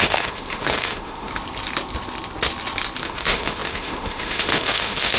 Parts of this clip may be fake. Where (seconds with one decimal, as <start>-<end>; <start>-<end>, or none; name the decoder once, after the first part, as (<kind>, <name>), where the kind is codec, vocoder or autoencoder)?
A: 0.0-1.3 (autoencoder, DAC-VAE); 3.0-5.2

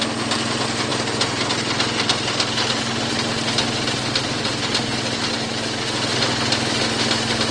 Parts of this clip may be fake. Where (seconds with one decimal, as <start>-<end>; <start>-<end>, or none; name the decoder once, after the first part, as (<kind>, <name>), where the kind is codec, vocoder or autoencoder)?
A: none

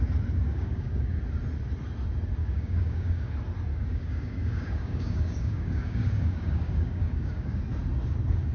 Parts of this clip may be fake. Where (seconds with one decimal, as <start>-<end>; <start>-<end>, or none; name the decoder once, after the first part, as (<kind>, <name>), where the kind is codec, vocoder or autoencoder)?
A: 0.5-1.2 (codec, DAC); 2.4-3.3; 3.7-7.6

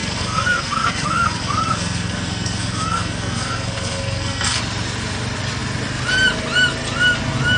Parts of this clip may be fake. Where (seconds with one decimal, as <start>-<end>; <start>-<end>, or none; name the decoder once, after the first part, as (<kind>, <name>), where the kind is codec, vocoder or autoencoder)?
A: 0.0-4.6 (codec, SNAC)

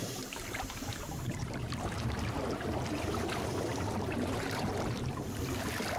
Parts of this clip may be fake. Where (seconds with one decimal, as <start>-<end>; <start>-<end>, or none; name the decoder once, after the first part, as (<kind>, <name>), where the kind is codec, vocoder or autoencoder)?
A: 0.0-2.4 (vocoder, BigVGAN v2); 3.7-4.7

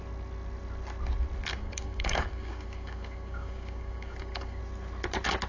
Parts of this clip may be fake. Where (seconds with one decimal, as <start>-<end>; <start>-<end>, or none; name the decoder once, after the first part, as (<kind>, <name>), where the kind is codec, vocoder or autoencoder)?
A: 1.5-4.6 (codec, DAC)

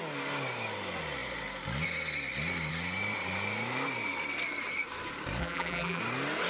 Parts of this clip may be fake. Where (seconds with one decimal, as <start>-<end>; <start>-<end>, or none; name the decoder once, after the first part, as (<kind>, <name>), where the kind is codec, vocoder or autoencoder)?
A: 5.4-6.0 (vocoder, BigVGAN v2)